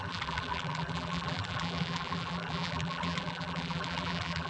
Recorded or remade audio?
remade